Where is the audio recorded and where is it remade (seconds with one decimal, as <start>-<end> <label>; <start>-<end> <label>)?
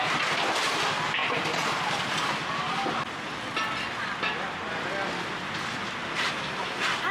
0.0-1.2 recorded; 1.2-2.9 remade; 2.9-7.1 recorded